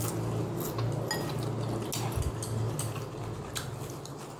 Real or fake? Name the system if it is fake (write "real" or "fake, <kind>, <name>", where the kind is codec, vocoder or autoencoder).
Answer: real